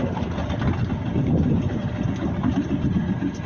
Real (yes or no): yes